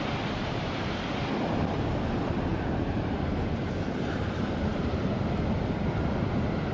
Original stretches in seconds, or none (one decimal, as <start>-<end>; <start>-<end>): 0.0-0.4; 1.2-2.5; 5.2-6.7